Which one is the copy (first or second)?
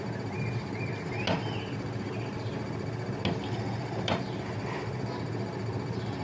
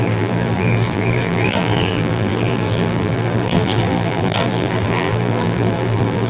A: second